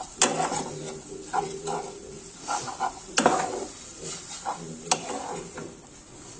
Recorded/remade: recorded